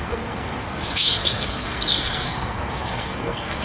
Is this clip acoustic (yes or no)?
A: no